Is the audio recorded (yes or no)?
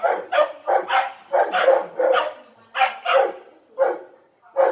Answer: yes